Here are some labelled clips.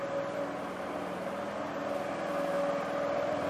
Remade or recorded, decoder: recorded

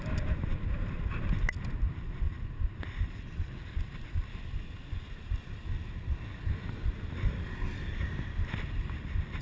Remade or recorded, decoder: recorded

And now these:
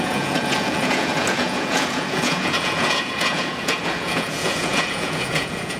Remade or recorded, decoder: remade, vocoder, Vocos